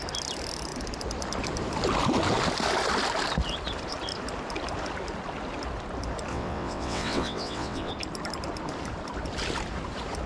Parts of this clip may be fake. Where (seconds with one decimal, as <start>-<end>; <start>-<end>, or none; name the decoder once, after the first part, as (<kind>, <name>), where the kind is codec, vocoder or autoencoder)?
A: 6.3-7.9 (vocoder, WaveNeXt)